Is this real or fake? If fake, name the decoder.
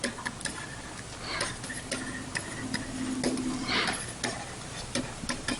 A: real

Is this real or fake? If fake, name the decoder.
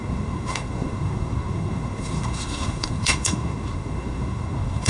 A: fake, codec, SNAC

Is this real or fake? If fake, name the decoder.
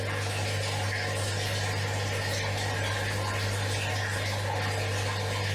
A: real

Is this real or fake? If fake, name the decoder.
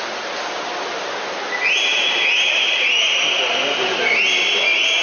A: real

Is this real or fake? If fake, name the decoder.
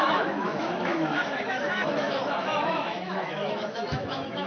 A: fake, autoencoder, DAC-VAE